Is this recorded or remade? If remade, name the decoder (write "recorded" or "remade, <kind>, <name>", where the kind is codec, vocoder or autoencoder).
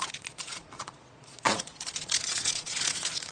remade, vocoder, Vocos